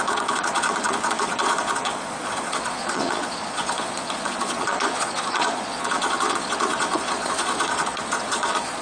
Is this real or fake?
fake